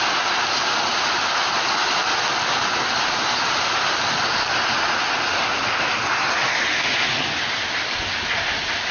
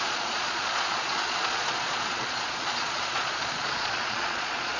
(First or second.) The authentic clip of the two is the first